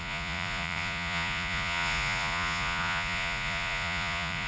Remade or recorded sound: remade